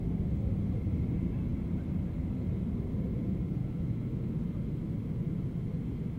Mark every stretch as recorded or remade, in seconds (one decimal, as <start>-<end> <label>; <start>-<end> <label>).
0.0-3.6 recorded; 3.6-4.3 remade; 4.3-6.2 recorded